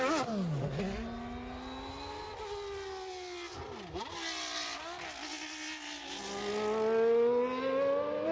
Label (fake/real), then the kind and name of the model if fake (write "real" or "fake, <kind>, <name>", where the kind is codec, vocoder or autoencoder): real